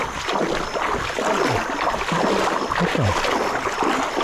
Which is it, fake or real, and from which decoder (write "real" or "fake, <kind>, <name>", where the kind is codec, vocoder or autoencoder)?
real